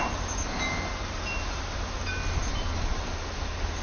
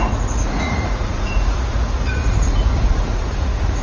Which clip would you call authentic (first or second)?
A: first